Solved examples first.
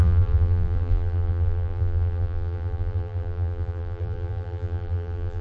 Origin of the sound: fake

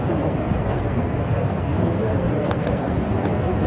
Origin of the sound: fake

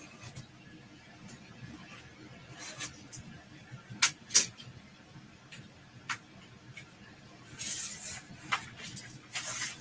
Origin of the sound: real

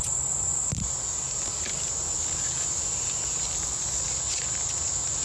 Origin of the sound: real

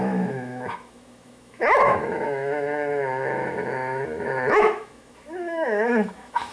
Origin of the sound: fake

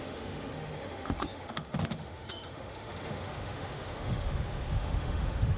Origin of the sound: fake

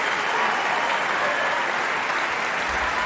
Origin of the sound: real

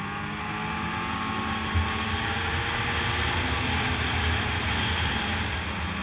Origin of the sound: real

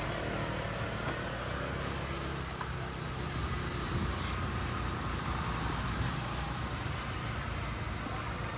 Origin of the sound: real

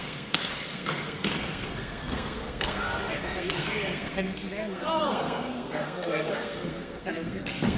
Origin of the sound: fake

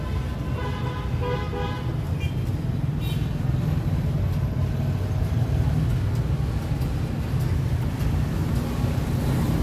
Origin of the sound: real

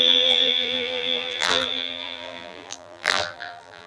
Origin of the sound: fake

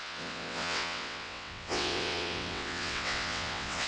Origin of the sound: fake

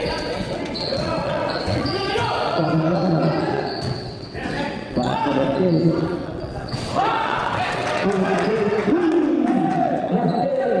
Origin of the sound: fake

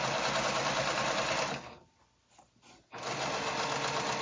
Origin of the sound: real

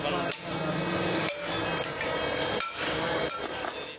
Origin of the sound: real